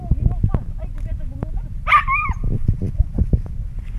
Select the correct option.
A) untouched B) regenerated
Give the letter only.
A